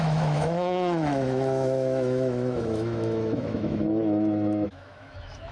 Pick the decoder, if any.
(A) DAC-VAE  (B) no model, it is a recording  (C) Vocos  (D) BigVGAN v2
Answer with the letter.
A